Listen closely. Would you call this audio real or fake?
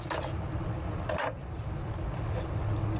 real